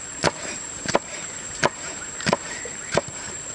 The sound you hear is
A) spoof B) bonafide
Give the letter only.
A